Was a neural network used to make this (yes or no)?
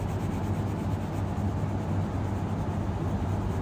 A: no